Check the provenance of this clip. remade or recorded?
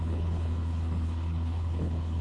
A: remade